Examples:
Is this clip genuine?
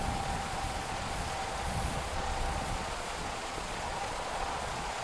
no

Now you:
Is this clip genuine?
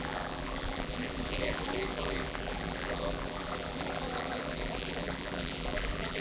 no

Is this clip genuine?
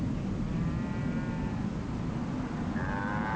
yes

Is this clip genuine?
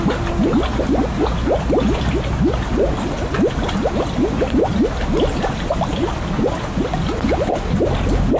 yes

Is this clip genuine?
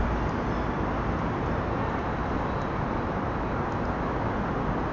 yes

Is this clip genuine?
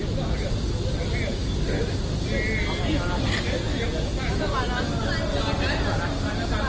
yes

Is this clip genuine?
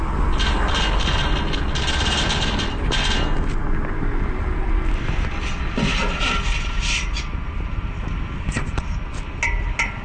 yes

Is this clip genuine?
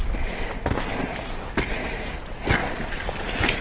yes